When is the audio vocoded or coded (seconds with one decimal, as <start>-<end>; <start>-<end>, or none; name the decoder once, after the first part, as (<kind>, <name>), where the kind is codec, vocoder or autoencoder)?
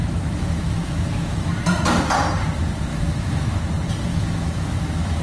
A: 0.0-1.5 (autoencoder, DAC-VAE); 2.9-3.6; 4.1-5.2